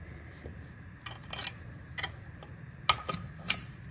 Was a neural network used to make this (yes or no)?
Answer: no